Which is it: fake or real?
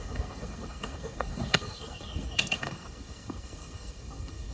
fake